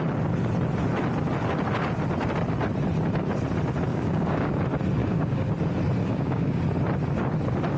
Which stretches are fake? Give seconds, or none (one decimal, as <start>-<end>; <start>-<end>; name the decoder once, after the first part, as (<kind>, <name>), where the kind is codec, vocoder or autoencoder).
3.9-4.5 (codec, DAC); 5.0-5.5; 6.0-6.6